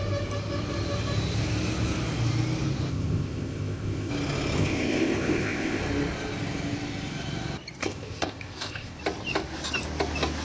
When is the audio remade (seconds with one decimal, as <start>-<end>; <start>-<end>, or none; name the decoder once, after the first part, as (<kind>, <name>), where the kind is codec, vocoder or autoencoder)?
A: 2.9-4.1 (codec, ZipCodec); 4.6-5.8; 7.8-9.0